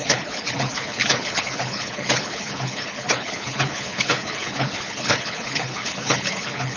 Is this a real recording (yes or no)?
no